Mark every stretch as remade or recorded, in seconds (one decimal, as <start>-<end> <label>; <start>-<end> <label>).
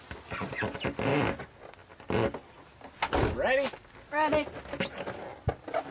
0.0-5.9 recorded